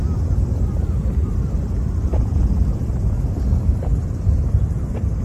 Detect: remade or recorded recorded